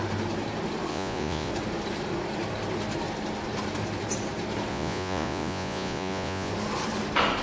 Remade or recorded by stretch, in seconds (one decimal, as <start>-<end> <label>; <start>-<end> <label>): 0.0-0.9 recorded; 0.9-1.5 remade; 1.5-4.7 recorded; 4.7-6.5 remade; 6.5-7.4 recorded